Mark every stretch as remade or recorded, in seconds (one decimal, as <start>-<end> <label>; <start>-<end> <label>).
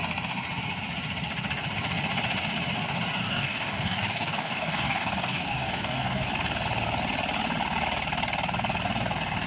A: 0.0-3.2 recorded; 3.2-6.3 remade; 6.3-9.5 recorded